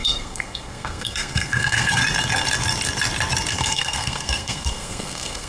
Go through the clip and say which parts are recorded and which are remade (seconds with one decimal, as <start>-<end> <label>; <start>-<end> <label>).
0.0-2.0 remade; 2.0-3.5 recorded; 3.5-5.5 remade